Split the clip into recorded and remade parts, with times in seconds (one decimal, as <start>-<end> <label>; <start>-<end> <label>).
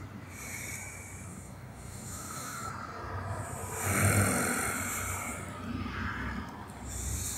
0.0-1.3 recorded; 1.3-2.7 remade; 2.7-7.4 recorded